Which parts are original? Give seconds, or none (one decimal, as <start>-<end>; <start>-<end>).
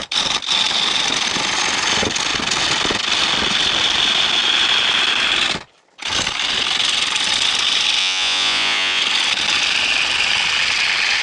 0.0-8.0; 9.0-11.2